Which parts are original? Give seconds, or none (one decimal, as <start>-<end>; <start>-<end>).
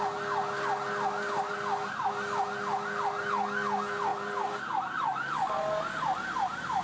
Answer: 0.0-4.1; 4.8-6.8